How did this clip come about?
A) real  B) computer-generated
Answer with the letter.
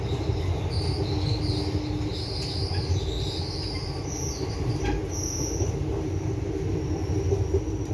A